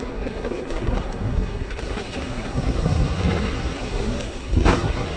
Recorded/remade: remade